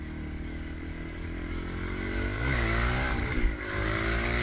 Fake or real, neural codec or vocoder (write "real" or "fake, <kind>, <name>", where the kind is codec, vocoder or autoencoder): fake, codec, DAC